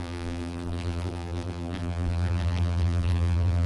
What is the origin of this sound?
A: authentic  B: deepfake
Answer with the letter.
B